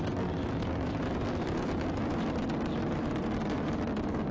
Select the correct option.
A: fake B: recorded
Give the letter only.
B